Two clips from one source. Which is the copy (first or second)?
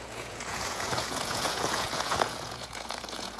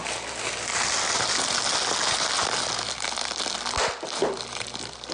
first